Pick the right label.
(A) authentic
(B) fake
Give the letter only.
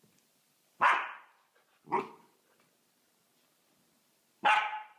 A